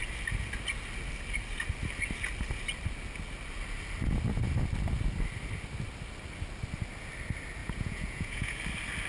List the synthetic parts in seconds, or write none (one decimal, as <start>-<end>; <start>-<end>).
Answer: 7.6-8.6